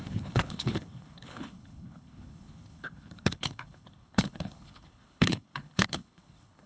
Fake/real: fake